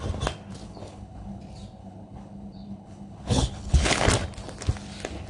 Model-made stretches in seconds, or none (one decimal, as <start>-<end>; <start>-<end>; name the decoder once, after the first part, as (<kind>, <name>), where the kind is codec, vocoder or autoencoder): 0.6-1.4 (codec, HILCodec); 1.8-4.0

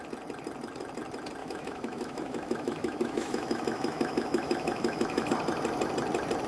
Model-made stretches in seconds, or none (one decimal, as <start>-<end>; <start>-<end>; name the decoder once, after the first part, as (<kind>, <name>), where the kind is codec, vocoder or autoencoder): 1.4-5.3 (autoencoder, DAC-VAE)

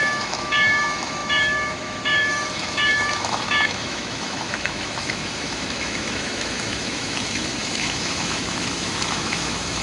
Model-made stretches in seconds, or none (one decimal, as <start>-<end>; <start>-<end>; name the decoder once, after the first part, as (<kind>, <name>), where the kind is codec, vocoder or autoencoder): 0.0-9.8 (autoencoder, DAC-VAE)